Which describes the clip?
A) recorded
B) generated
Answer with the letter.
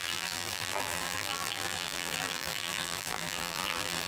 B